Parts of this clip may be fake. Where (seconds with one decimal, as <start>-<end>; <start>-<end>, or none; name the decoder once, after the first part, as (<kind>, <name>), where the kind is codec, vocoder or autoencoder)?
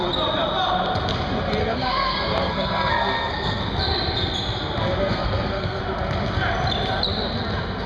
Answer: 1.6-3.6 (codec, SNAC); 5.0-5.8